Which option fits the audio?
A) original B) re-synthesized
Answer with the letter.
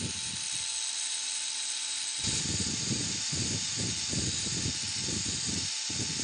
A